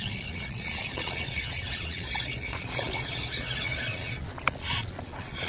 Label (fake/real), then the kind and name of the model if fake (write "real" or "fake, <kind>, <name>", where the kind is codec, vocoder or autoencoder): fake, vocoder, Vocos